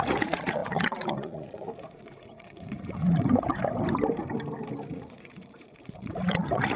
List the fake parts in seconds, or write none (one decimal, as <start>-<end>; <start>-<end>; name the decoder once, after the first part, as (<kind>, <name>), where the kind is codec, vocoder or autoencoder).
0.0-3.5 (vocoder, Vocos); 4.9-6.8